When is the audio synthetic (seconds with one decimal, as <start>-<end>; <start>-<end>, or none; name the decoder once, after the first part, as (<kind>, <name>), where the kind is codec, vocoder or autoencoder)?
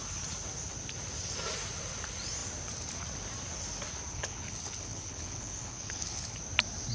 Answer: 4.1-6.4 (codec, HILCodec)